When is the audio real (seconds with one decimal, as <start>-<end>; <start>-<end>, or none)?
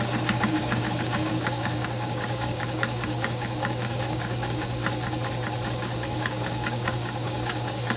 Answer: 4.8-5.7